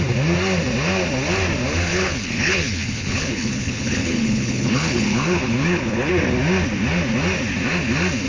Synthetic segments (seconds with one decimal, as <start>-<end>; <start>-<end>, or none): 1.9-6.1